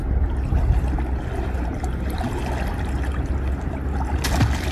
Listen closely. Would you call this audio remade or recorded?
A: recorded